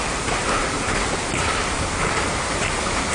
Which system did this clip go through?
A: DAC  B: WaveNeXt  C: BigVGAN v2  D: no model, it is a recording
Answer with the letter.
C